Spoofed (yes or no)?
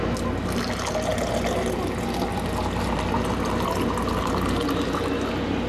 no